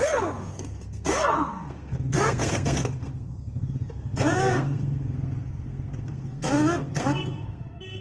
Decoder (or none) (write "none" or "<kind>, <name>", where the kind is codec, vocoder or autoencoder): codec, SNAC